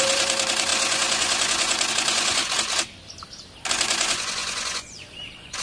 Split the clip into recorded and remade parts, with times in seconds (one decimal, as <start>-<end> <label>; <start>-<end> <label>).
0.0-2.4 remade; 2.4-3.7 recorded; 3.7-5.6 remade